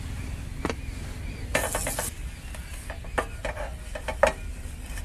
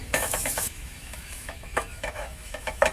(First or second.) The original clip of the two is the first